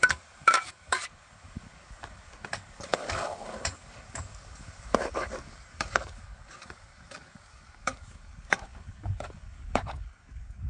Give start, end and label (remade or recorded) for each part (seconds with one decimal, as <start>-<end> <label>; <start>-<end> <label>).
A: 0.0-10.7 remade